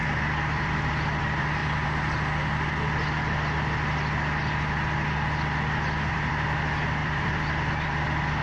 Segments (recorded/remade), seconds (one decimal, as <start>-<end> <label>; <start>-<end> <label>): 0.0-1.6 remade; 1.6-6.1 recorded; 6.1-8.4 remade